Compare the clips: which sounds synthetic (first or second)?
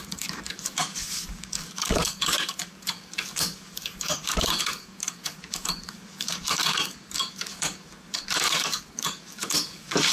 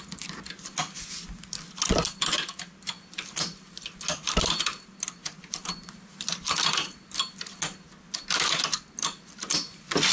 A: first